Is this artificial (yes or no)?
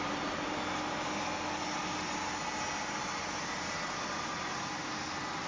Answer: no